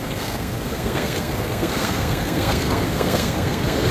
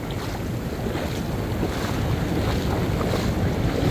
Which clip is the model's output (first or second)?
first